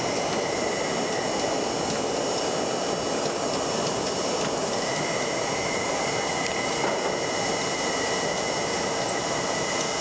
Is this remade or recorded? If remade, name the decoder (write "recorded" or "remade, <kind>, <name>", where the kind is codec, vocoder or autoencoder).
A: recorded